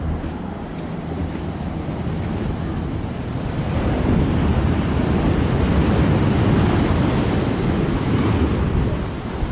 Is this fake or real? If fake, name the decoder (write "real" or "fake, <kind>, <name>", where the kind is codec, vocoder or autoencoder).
real